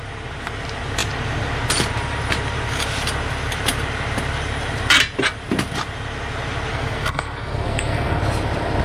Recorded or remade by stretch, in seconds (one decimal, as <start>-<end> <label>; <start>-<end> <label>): 0.0-6.7 recorded; 6.7-8.2 remade; 8.2-8.8 recorded